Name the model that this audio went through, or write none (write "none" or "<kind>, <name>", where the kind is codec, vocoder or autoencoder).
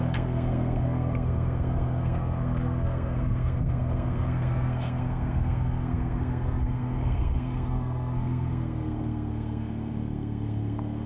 codec, SNAC